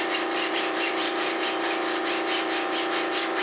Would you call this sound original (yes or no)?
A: no